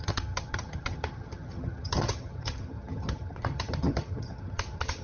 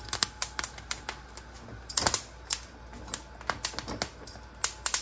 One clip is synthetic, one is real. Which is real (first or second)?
second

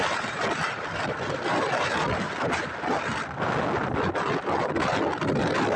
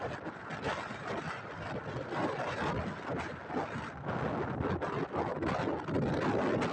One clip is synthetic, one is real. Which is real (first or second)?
second